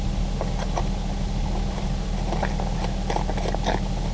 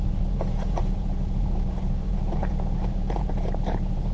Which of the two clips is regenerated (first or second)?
second